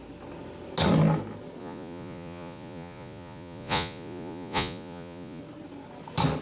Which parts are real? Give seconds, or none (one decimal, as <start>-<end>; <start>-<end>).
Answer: 0.0-1.6; 5.4-6.4